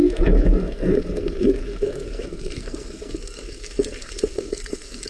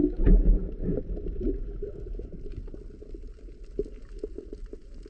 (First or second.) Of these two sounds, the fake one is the first